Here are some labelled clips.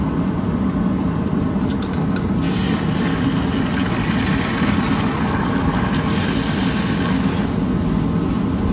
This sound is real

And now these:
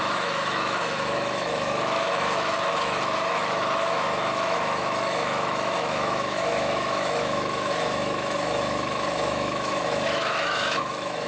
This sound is fake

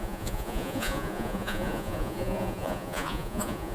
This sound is fake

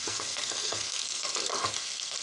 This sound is fake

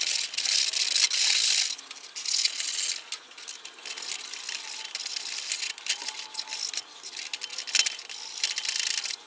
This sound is real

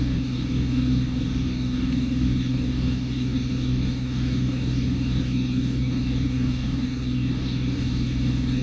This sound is fake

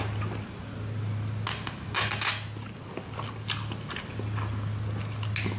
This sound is real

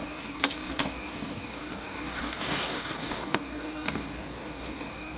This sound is fake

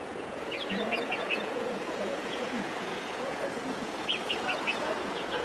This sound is fake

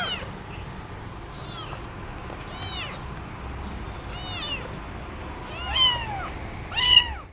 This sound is real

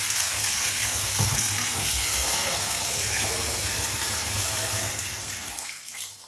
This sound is fake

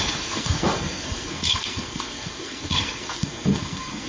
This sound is fake